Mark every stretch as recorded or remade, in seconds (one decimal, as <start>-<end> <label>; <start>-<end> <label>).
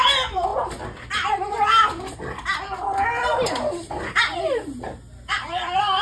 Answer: 0.0-0.5 remade; 0.5-4.1 recorded; 4.1-6.0 remade